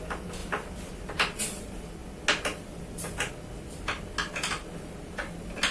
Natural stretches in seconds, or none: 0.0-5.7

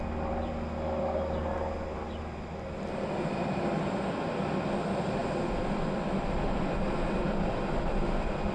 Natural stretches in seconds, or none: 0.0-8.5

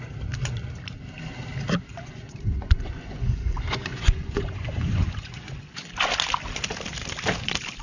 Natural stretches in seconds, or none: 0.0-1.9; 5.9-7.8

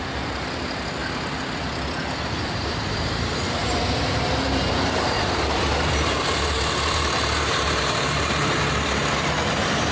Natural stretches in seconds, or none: 1.0-2.5